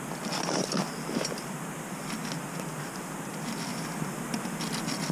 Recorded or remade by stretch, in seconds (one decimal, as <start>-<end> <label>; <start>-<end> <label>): 0.0-2.2 remade; 2.2-2.8 recorded; 2.8-3.7 remade; 3.7-5.1 recorded